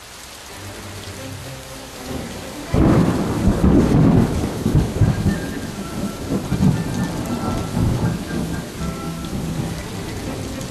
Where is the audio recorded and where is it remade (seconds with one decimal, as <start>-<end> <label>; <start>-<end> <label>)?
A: 0.0-1.4 recorded; 1.4-6.4 remade; 6.4-7.7 recorded; 7.7-9.9 remade; 9.9-10.7 recorded